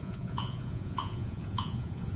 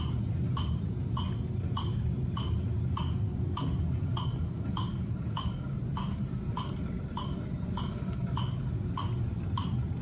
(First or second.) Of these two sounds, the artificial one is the first